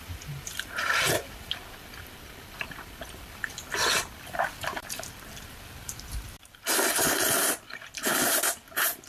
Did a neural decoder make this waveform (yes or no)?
yes